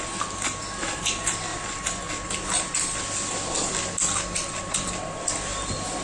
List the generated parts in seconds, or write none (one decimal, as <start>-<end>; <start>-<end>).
none